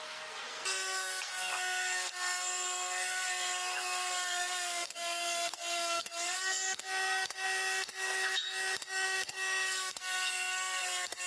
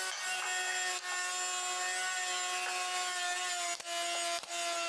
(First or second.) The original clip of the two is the second